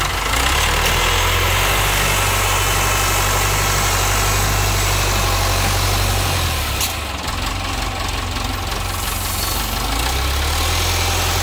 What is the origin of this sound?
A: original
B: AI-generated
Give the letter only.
A